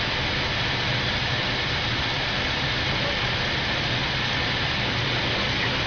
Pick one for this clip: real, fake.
real